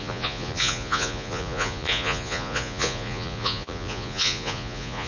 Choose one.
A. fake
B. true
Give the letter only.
A